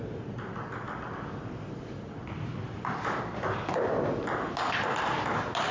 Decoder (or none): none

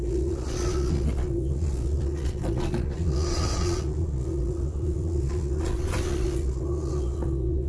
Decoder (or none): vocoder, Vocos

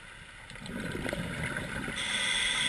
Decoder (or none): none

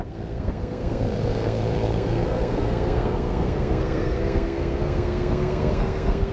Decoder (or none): codec, SNAC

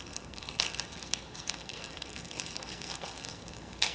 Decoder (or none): codec, SNAC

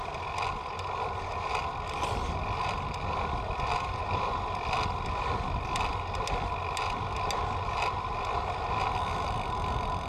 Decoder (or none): none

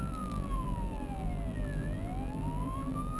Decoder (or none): vocoder, BigVGAN v2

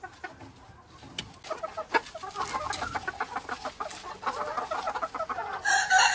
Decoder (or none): none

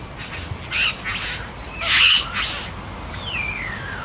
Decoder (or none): none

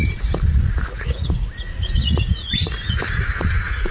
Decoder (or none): vocoder, Vocos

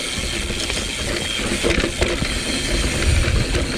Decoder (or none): none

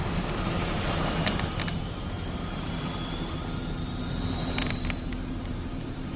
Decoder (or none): vocoder, BigVGAN v2